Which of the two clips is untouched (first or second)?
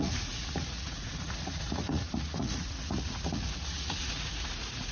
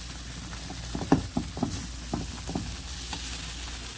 second